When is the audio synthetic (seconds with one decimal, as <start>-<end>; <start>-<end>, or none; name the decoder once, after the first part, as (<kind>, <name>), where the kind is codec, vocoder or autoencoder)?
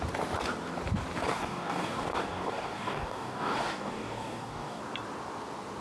1.3-4.8 (codec, DAC)